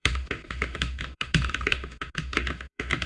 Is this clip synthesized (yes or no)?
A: yes